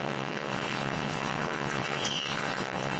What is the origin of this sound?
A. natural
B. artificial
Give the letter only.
B